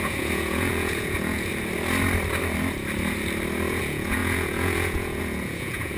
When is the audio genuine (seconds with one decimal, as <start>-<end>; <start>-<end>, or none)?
1.5-3.8